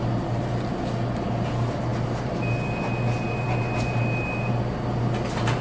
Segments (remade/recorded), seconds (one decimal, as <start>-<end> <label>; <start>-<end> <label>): 0.0-5.6 recorded